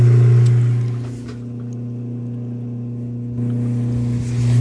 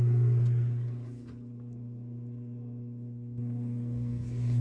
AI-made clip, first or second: second